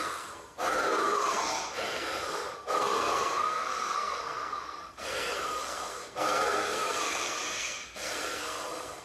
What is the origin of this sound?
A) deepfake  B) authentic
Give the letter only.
A